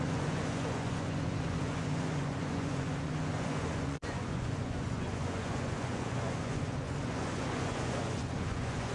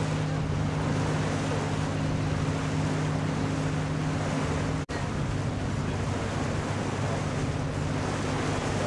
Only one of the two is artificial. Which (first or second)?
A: first